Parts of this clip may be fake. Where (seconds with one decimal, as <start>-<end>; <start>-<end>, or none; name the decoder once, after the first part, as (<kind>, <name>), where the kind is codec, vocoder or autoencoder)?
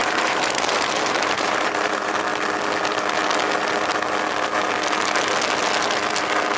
0.0-2.3 (vocoder, BigVGAN v2)